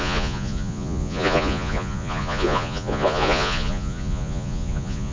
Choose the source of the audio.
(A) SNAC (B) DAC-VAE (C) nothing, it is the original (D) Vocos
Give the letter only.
D